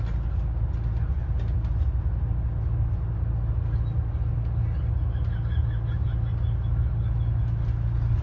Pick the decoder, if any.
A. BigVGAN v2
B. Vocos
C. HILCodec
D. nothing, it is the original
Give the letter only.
D